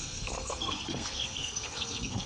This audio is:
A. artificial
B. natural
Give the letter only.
A